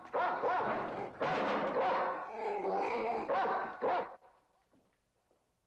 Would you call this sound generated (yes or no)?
no